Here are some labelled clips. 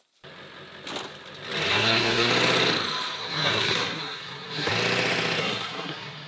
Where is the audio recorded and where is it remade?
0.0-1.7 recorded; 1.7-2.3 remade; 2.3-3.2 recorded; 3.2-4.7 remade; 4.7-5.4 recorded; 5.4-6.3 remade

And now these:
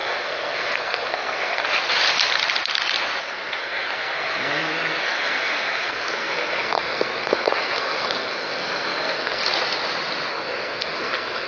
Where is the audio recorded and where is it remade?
0.0-1.7 remade; 1.7-3.2 recorded; 3.2-9.4 remade; 9.4-10.3 recorded; 10.3-11.5 remade

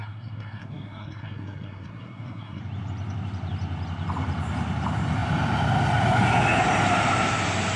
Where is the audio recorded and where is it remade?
0.0-2.6 remade; 2.6-7.8 recorded

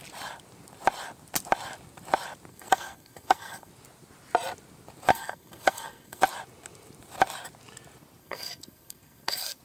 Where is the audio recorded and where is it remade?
0.0-2.5 recorded; 2.5-3.7 remade; 3.7-5.1 recorded; 5.1-6.2 remade; 6.2-8.2 recorded; 8.2-9.6 remade

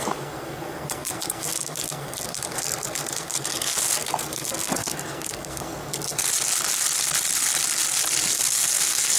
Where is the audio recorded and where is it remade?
0.0-6.3 remade; 6.3-8.3 recorded; 8.3-9.2 remade

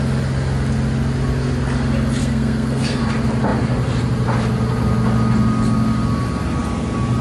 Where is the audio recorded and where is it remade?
0.0-2.2 recorded; 2.2-3.0 remade; 3.0-7.2 recorded

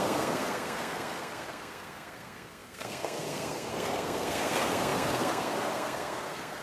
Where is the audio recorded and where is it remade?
0.0-6.6 remade